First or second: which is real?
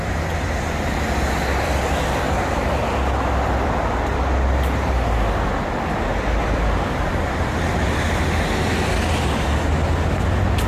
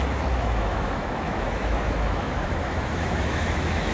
first